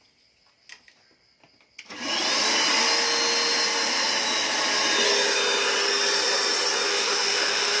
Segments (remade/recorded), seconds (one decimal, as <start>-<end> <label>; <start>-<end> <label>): 0.0-6.9 recorded; 6.9-7.8 remade